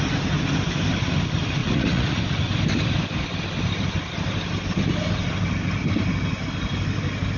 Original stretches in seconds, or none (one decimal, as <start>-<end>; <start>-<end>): 0.0-1.6; 2.2-7.4